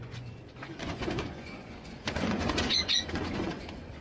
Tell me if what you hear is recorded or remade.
remade